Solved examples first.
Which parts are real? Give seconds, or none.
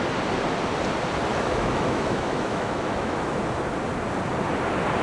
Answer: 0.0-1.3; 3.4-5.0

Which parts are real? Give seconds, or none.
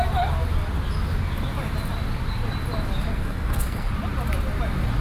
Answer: 0.0-3.1; 3.9-5.0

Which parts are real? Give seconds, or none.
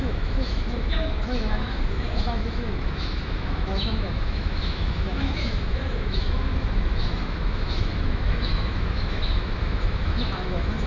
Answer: none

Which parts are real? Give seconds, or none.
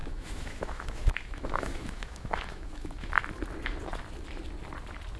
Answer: 3.1-5.2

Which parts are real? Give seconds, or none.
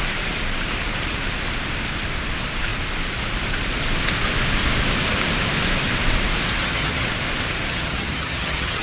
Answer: 0.0-6.6; 7.1-7.7